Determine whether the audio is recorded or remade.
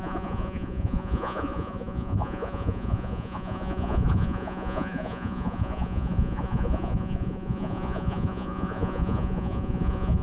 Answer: remade